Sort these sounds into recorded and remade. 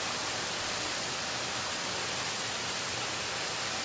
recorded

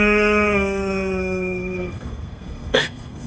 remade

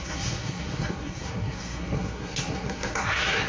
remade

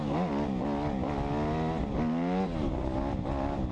recorded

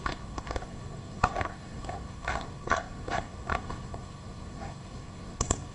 remade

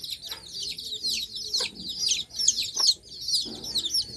recorded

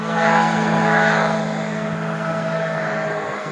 remade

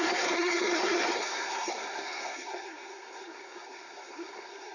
remade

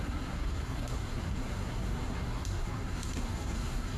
remade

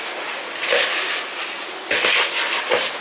recorded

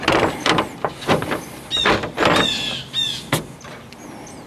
recorded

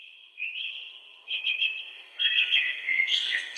remade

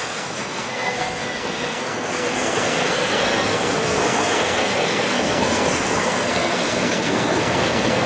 remade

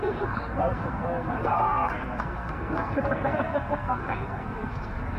remade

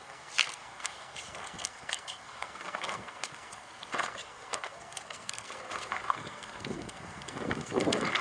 remade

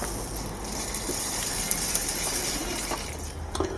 recorded